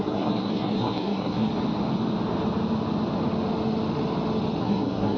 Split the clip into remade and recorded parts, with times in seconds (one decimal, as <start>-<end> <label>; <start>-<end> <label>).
0.0-1.5 remade; 1.5-4.6 recorded; 4.6-5.2 remade